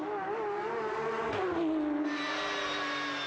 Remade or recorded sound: recorded